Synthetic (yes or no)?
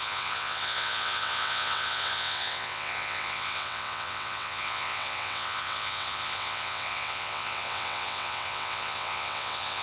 yes